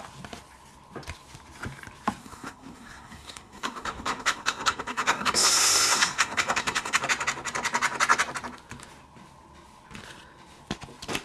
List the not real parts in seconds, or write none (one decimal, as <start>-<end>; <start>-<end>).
2.2-7.0